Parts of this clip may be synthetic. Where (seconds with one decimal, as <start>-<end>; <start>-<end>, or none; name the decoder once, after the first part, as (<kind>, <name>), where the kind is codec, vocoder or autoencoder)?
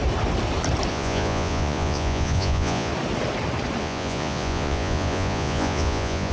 0.9-2.9 (vocoder, Vocos); 3.8-6.3